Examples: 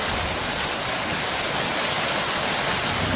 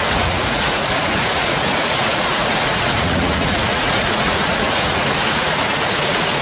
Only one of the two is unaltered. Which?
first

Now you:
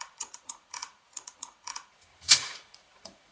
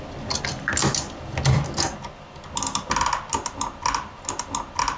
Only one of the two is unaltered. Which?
second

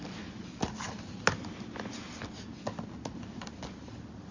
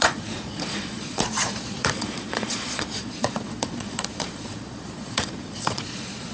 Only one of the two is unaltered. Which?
first